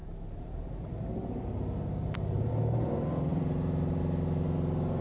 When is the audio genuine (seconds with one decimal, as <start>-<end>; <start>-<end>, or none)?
2.5-3.3; 4.0-5.0